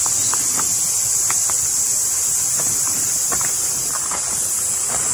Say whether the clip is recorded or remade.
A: recorded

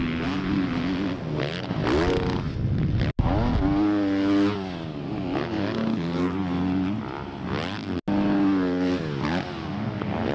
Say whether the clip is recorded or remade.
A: recorded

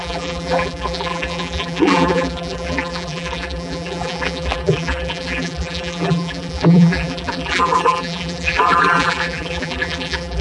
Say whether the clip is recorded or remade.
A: remade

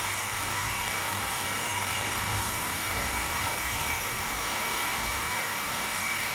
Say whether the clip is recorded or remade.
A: remade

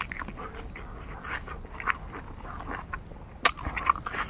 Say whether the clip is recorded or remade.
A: recorded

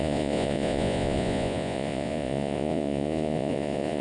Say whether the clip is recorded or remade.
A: remade